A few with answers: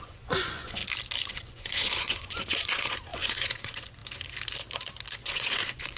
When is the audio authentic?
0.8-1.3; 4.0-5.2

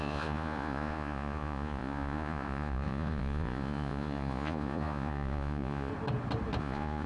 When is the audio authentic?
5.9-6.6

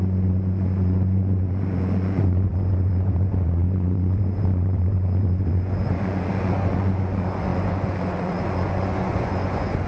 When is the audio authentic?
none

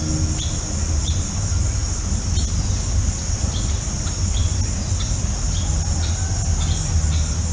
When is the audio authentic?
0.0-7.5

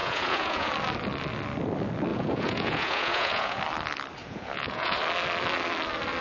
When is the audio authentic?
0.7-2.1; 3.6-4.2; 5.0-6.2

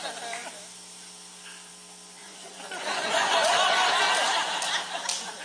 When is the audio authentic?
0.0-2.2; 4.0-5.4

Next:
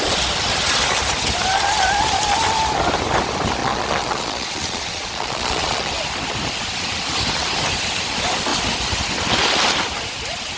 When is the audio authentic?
0.0-3.6; 5.9-10.6

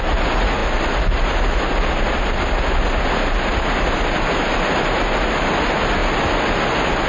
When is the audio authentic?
0.0-7.1